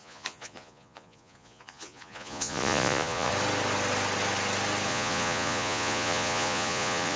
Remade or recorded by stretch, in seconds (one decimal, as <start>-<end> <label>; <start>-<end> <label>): 0.0-3.3 remade; 3.3-4.9 recorded; 4.9-7.2 remade